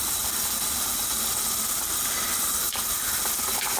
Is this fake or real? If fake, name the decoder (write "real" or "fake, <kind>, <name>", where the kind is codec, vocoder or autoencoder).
real